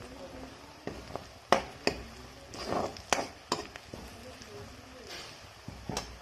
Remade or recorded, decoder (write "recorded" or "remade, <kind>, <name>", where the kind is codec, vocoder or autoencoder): recorded